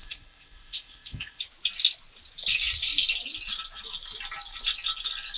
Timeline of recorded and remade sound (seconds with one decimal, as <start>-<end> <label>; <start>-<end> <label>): 0.0-1.4 remade; 1.4-5.4 recorded